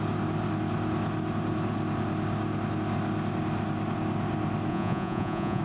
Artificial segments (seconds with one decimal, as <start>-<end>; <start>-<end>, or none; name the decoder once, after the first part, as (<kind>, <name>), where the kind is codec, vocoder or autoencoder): 4.7-5.6 (vocoder, Vocos)